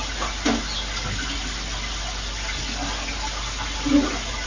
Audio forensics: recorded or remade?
recorded